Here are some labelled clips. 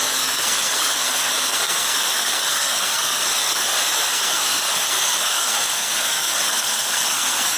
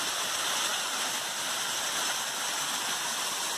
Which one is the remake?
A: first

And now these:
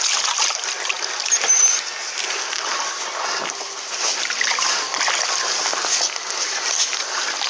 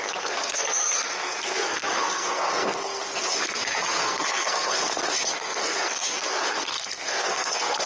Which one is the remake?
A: second